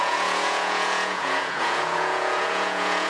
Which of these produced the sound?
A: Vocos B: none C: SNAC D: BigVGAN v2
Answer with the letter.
A